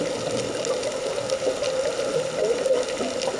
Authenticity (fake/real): real